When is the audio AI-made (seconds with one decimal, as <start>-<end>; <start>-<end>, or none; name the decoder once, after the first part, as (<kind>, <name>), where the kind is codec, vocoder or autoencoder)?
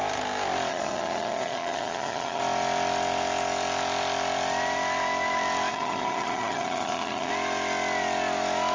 0.7-2.4 (vocoder, HiFi-GAN); 5.7-7.3